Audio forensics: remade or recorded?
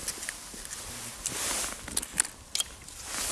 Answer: recorded